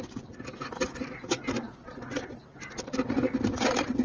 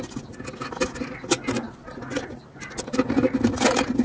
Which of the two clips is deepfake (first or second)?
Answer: first